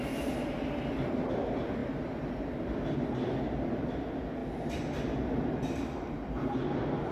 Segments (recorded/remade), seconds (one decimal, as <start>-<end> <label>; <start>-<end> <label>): 0.0-7.1 recorded